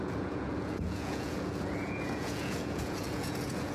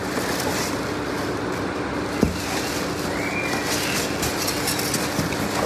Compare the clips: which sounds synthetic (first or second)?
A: first